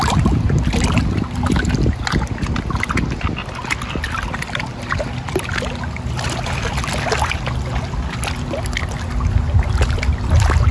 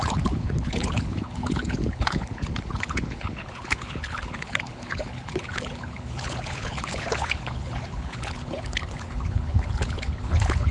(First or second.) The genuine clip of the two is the first